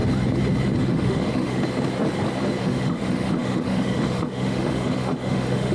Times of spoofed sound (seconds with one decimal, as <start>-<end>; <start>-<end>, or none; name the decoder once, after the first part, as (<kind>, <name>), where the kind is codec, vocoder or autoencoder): 0.8-1.6 (autoencoder, DAC-VAE); 2.6-5.7